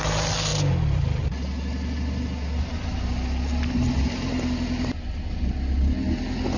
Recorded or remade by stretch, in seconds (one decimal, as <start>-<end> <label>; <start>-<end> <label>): 0.0-6.6 recorded